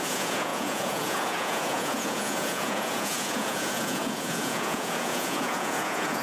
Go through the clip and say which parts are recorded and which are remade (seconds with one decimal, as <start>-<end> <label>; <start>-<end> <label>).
0.0-6.2 remade